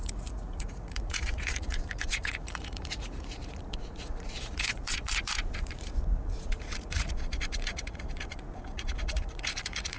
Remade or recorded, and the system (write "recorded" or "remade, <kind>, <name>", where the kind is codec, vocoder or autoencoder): remade, vocoder, Vocos